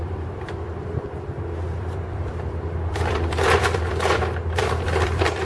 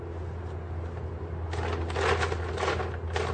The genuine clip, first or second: second